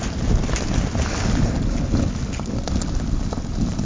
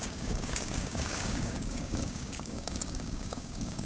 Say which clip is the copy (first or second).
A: second